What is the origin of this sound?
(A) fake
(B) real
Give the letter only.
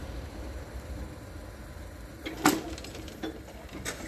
B